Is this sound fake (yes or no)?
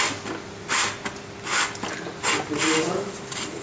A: no